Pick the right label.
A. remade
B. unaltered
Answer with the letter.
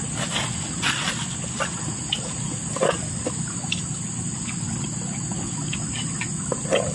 B